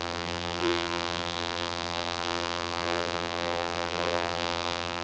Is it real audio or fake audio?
fake